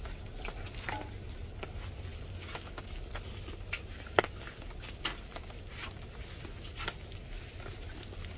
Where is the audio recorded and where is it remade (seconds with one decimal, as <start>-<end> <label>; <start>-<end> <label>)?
0.0-8.4 recorded